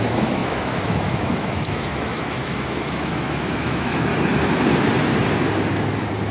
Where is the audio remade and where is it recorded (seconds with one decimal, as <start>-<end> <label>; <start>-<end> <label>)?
0.0-4.1 remade; 4.1-6.3 recorded